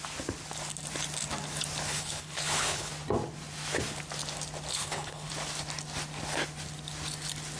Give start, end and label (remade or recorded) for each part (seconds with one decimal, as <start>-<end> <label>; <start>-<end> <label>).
0.0-1.9 recorded; 1.9-2.9 remade; 2.9-4.7 recorded; 4.7-5.3 remade; 5.3-7.6 recorded